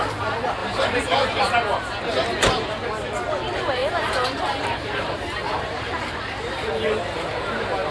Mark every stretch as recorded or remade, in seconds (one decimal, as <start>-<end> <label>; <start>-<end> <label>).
0.0-0.6 recorded; 0.6-1.4 remade; 1.4-3.8 recorded; 3.8-6.2 remade; 6.2-7.9 recorded

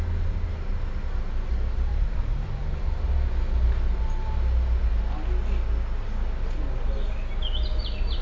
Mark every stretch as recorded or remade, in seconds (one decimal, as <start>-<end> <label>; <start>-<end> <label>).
0.0-1.9 recorded; 1.9-3.0 remade; 3.0-8.2 recorded

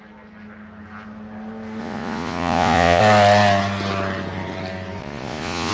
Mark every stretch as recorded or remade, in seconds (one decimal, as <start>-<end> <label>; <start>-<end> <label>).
0.0-1.8 recorded; 1.8-3.0 remade; 3.0-5.0 recorded; 5.0-5.7 remade